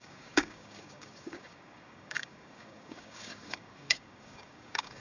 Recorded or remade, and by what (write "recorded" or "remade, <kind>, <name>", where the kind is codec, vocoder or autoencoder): remade, codec, DAC